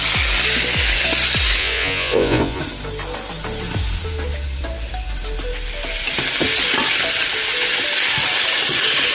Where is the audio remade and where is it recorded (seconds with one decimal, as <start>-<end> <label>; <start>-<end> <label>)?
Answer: 0.0-1.6 recorded; 1.6-2.6 remade; 2.6-9.1 recorded

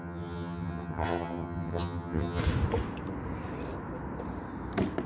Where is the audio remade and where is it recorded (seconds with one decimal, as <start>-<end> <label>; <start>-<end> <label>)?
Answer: 0.0-2.4 remade; 2.4-5.1 recorded

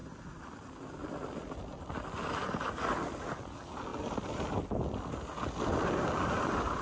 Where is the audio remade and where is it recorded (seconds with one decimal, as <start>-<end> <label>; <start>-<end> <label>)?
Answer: 0.0-6.8 recorded